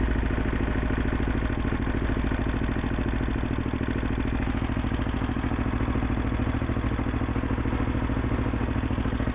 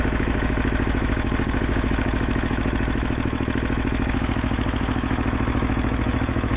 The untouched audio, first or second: first